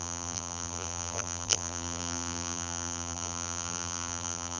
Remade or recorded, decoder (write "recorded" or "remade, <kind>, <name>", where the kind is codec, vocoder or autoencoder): remade, vocoder, BigVGAN v2